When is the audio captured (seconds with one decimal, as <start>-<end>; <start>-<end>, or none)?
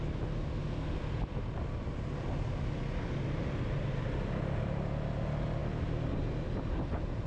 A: 0.0-7.3